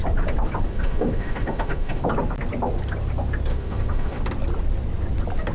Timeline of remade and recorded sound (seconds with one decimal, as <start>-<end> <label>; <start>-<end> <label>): 0.0-0.7 recorded; 0.7-2.0 remade; 2.0-3.5 recorded; 3.5-4.2 remade; 4.2-5.5 recorded